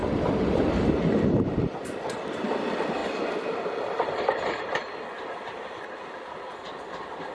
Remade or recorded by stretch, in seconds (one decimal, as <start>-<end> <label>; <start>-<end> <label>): 0.0-7.3 recorded